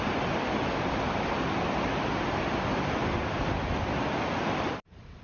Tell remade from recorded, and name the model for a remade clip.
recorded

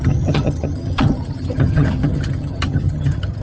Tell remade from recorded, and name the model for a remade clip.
remade, vocoder, HiFi-GAN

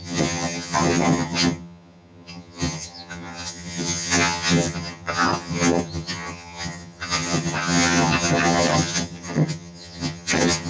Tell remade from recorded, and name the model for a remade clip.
remade, vocoder, HiFi-GAN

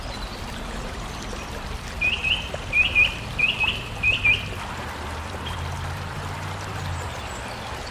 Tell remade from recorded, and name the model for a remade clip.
remade, vocoder, BigVGAN v2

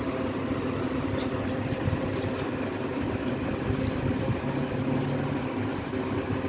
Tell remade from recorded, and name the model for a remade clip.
recorded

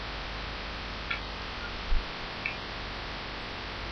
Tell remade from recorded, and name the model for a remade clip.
recorded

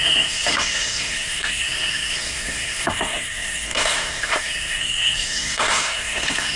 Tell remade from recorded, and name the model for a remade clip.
remade, codec, SNAC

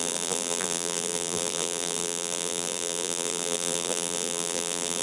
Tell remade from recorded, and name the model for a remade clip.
remade, vocoder, BigVGAN v2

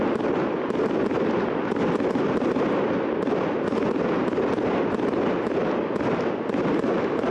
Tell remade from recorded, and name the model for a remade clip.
recorded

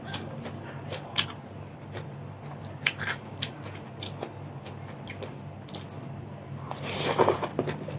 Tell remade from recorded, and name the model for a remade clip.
recorded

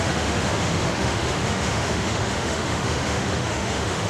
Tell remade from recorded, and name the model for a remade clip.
remade, autoencoder, DAC-VAE